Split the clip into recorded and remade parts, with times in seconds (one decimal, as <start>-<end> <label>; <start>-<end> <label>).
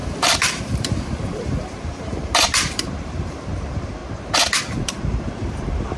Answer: 0.0-4.0 remade; 4.0-4.6 recorded; 4.6-6.0 remade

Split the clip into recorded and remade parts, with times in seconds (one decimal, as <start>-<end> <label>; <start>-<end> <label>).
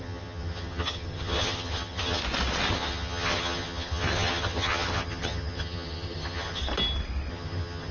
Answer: 0.0-2.2 remade; 2.2-2.7 recorded; 2.7-6.6 remade; 6.6-7.3 recorded; 7.3-7.9 remade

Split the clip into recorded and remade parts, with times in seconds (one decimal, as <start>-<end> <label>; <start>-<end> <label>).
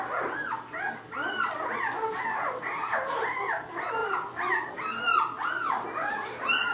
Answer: 0.0-6.7 recorded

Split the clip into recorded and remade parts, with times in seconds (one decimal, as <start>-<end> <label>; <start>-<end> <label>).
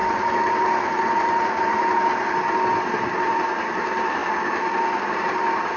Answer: 0.0-2.1 remade; 2.1-3.3 recorded; 3.3-4.2 remade; 4.2-5.1 recorded; 5.1-5.8 remade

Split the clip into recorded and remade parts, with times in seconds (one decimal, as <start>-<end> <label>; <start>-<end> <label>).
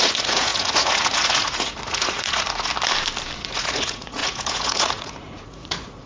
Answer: 0.0-2.7 remade; 2.7-3.4 recorded; 3.4-6.1 remade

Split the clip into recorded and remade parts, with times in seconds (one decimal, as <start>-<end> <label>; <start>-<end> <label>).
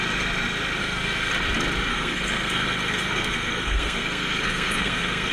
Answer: 0.0-0.8 recorded; 0.8-1.3 remade; 1.3-1.9 recorded; 1.9-5.3 remade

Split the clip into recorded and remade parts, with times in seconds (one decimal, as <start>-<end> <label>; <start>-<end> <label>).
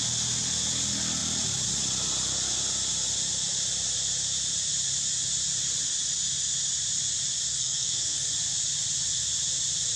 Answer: 0.0-7.5 recorded; 7.5-8.3 remade; 8.3-10.0 recorded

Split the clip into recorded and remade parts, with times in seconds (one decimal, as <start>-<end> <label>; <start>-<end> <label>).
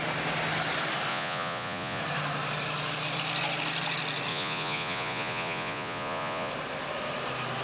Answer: 0.0-1.1 recorded; 1.1-2.0 remade; 2.0-4.3 recorded; 4.3-6.5 remade; 6.5-7.6 recorded